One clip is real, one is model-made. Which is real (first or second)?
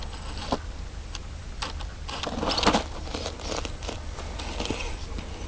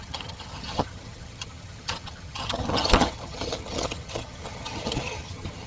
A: first